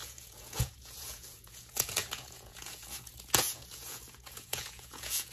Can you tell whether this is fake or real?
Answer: fake